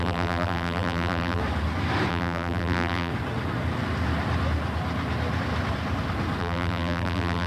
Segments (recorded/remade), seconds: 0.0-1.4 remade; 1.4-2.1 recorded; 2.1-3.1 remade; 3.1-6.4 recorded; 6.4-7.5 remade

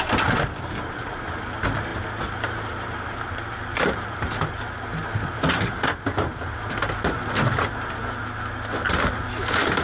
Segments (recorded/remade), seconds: 0.0-1.9 recorded; 1.9-4.3 remade; 4.3-9.8 recorded

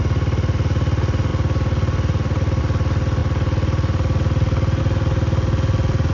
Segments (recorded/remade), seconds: 0.0-6.1 recorded

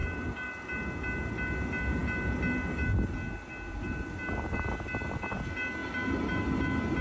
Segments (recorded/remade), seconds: 0.0-0.5 remade; 0.5-5.8 recorded; 5.8-6.4 remade; 6.4-7.0 recorded

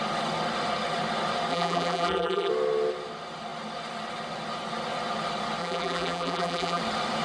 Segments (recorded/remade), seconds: 0.0-1.5 recorded; 1.5-2.5 remade; 2.5-5.6 recorded; 5.6-6.8 remade; 6.8-7.2 recorded